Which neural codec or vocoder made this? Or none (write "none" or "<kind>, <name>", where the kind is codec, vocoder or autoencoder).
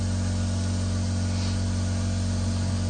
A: none